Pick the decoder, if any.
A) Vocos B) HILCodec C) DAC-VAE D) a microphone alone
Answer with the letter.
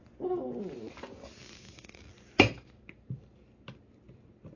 D